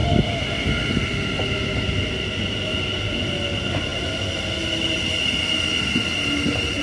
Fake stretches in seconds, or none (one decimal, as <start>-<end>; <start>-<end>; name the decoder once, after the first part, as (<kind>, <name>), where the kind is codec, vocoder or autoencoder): none